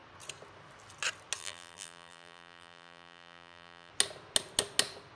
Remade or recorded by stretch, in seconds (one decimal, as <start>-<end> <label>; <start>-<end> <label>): 0.0-1.4 recorded; 1.4-3.9 remade; 3.9-5.2 recorded